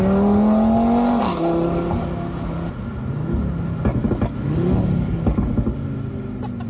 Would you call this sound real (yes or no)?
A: yes